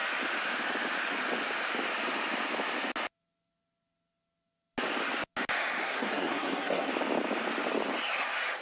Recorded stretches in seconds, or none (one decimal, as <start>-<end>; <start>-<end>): 0.0-5.8; 6.9-8.6